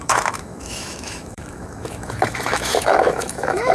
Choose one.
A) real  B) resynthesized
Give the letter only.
B